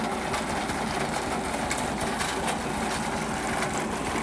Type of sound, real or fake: real